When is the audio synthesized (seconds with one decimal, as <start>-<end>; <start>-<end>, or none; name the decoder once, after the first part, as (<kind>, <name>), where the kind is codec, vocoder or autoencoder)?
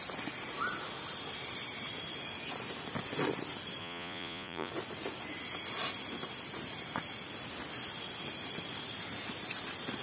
3.8-4.7 (vocoder, Vocos)